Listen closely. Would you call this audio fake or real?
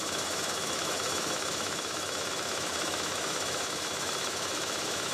fake